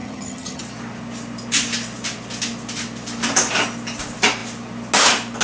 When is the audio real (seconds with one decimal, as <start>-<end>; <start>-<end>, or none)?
0.6-5.4